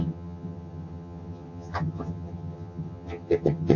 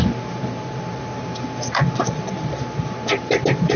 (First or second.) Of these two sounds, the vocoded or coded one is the first